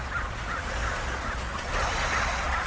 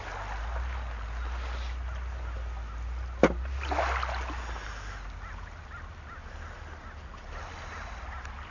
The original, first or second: second